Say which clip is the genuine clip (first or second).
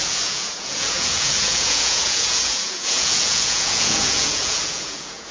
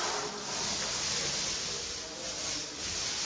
second